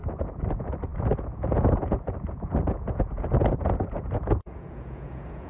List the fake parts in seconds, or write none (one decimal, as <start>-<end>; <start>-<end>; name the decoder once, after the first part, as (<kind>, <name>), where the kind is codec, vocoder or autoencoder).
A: 0.0-5.5 (vocoder, Vocos)